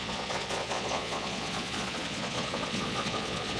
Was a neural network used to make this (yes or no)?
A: yes